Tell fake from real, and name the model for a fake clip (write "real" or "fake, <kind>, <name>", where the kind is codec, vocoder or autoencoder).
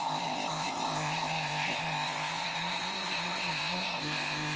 fake, codec, ZipCodec